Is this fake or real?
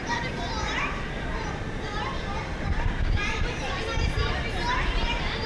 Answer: fake